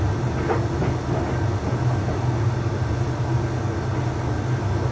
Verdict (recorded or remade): recorded